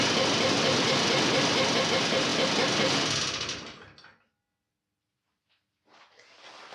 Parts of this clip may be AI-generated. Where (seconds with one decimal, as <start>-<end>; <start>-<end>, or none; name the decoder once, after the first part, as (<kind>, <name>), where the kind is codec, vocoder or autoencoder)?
none